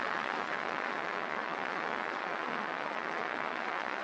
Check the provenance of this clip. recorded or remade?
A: remade